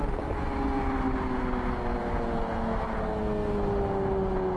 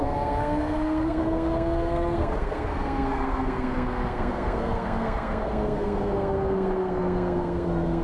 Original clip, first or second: first